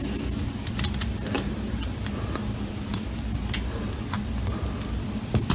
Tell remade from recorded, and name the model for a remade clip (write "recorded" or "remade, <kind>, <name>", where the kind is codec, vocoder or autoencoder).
remade, vocoder, BigVGAN v2